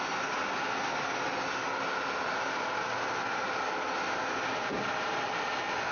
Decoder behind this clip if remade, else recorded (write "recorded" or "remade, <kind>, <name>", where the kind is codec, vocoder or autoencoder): recorded